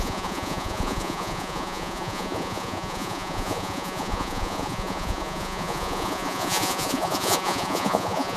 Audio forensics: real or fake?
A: fake